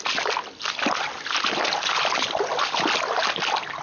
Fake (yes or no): no